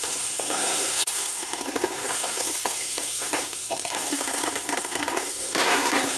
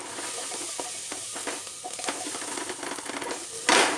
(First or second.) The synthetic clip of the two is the first